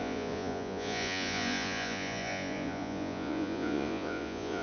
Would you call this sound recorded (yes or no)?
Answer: no